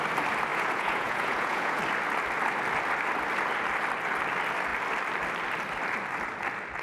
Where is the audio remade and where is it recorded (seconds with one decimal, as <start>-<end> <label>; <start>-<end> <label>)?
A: 0.0-0.5 recorded; 0.5-1.8 remade; 1.8-6.8 recorded